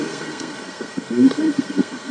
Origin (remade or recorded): remade